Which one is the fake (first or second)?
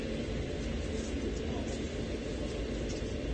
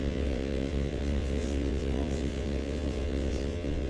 second